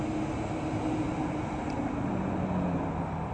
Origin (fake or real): real